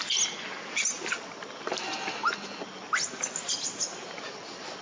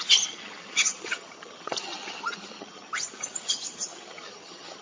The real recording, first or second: first